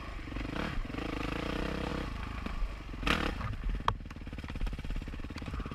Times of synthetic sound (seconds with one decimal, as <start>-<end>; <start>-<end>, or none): 0.0-1.9; 5.2-5.7